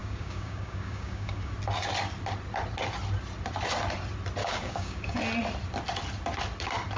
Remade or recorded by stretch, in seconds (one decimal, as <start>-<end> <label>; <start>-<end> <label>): 0.0-1.5 remade; 1.5-4.4 recorded; 4.4-5.2 remade; 5.2-7.0 recorded